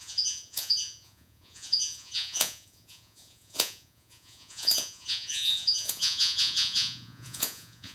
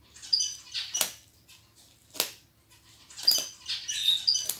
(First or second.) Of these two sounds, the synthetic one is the first